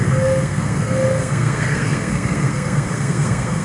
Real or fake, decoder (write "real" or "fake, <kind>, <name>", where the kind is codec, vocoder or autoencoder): fake, codec, SNAC